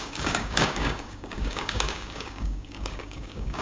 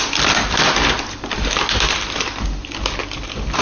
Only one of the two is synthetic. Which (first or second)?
first